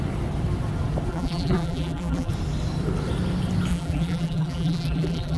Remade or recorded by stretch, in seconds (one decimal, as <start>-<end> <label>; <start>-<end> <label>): 0.0-1.1 recorded; 1.1-2.3 remade; 2.3-3.7 recorded; 3.7-5.4 remade